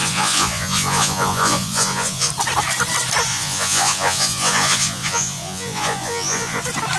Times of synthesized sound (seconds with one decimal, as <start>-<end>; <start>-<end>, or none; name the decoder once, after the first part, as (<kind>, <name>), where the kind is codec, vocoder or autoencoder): 0.0-2.3 (vocoder, Vocos); 3.3-6.6